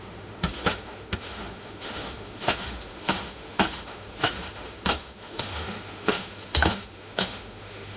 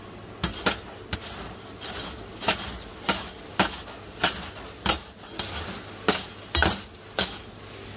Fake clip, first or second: first